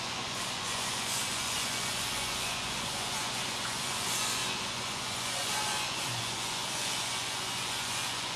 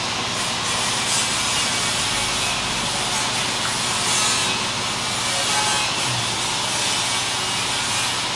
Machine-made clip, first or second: first